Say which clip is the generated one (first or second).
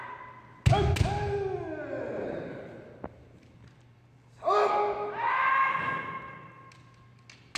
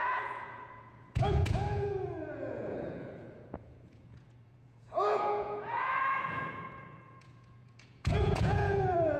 second